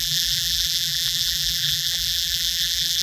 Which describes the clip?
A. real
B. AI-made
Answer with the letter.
B